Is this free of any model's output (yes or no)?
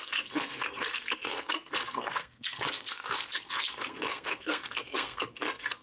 no